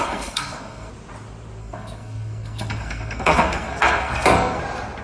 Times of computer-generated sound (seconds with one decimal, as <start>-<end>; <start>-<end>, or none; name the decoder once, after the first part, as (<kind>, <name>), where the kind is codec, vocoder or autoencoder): 0.0-0.9 (codec, SNAC); 1.6-4.6